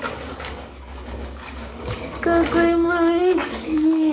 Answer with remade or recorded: remade